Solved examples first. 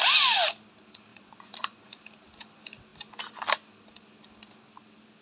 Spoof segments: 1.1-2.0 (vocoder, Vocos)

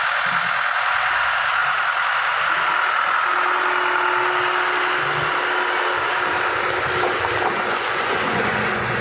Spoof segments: 7.5-9.0 (vocoder, Vocos)

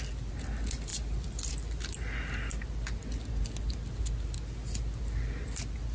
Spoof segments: none

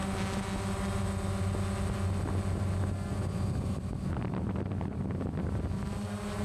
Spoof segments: none